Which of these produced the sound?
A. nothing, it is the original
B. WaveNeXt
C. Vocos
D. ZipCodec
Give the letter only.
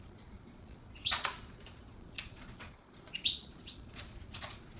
C